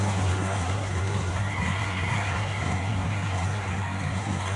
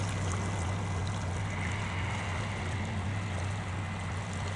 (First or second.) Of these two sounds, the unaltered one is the second